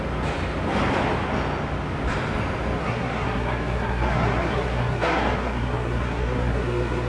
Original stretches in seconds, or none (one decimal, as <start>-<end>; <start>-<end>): 0.0-2.8